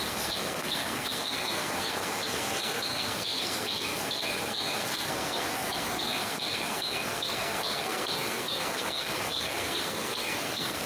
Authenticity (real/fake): fake